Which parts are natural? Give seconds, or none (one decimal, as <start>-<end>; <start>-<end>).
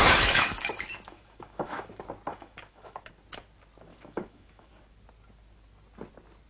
1.9-2.3; 3.1-3.9; 4.7-6.5